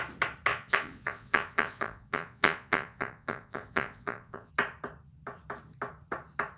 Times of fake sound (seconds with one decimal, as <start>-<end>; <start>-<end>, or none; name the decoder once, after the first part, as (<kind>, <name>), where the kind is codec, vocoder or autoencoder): 0.5-4.5 (vocoder, Vocos)

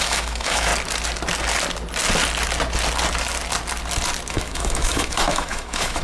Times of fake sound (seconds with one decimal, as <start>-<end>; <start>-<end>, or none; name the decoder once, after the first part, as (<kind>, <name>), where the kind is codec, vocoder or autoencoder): 0.0-0.7 (autoencoder, DAC-VAE); 4.3-6.0